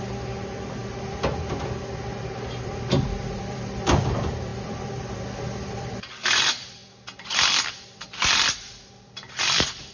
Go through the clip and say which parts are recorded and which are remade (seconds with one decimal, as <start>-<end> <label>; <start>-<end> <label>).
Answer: 0.0-0.8 remade; 0.8-2.5 recorded; 2.5-6.8 remade; 6.8-7.8 recorded; 7.8-9.9 remade